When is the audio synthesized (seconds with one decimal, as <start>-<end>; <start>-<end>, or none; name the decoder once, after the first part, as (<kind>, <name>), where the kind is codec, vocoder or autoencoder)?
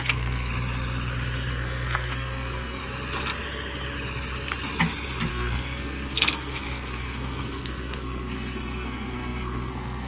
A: 0.0-0.5 (codec, SNAC); 1.5-2.8; 5.3-10.1